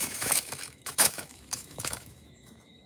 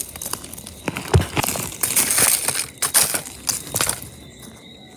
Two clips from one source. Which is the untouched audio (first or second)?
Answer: second